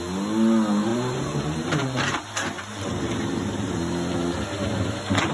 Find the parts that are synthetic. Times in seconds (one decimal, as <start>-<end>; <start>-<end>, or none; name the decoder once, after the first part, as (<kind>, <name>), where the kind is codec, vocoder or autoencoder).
0.9-4.1 (vocoder, BigVGAN v2)